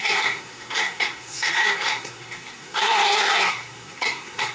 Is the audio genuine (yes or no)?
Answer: no